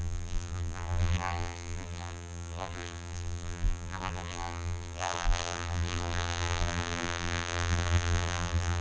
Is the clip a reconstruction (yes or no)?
yes